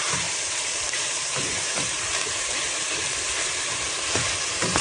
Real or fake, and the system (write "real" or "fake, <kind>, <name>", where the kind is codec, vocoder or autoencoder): fake, vocoder, BigVGAN v2